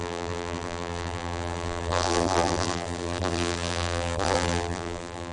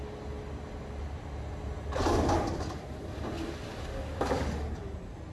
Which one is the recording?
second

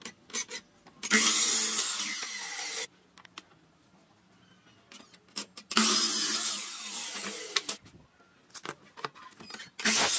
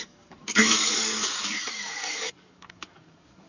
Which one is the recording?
first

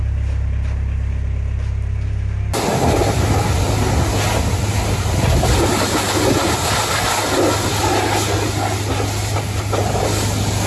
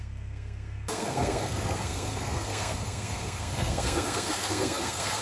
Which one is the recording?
first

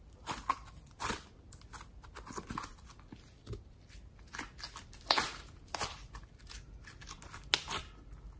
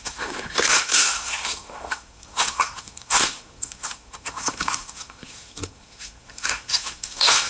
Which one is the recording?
first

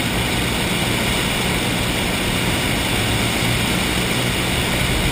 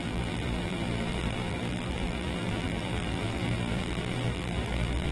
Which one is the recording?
first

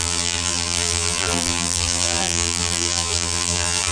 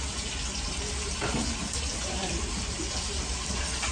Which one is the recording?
second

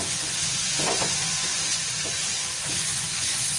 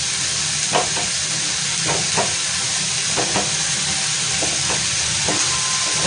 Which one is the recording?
second